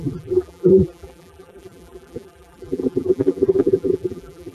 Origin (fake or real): fake